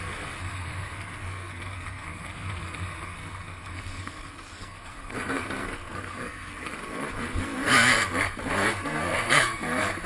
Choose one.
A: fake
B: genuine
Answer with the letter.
A